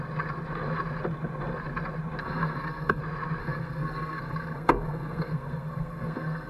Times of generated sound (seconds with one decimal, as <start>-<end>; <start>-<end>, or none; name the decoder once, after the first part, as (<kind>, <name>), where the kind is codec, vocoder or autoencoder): 2.2-3.0 (codec, SNAC); 3.4-6.5